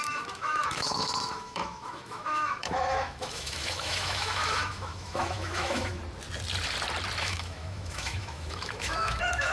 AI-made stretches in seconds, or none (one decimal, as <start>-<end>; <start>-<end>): 0.0-6.0; 7.2-9.5